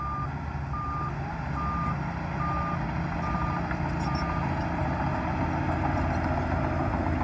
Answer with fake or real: real